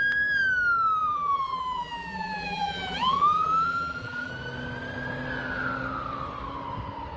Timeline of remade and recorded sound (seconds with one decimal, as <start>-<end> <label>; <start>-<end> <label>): 0.0-1.0 recorded; 1.0-4.3 remade; 4.3-7.2 recorded